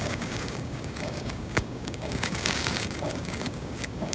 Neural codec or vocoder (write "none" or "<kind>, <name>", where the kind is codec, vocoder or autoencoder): codec, DAC